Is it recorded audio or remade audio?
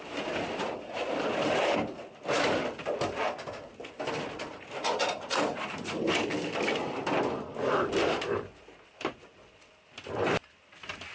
remade